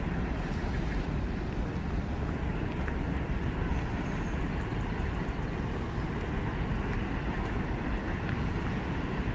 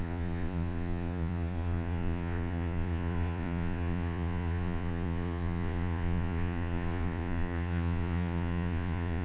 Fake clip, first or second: second